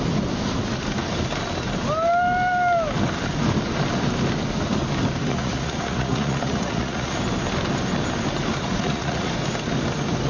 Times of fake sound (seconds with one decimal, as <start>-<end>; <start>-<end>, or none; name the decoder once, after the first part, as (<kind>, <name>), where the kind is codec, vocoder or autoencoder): 5.3-7.2 (vocoder, Vocos); 8.6-9.3